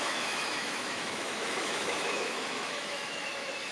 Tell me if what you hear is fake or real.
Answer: fake